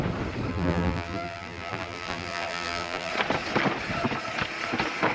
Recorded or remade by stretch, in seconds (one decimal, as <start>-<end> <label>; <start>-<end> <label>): 0.0-0.5 recorded; 0.5-3.1 remade; 3.1-5.1 recorded